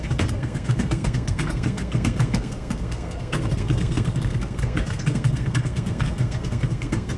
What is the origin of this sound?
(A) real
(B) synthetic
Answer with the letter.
B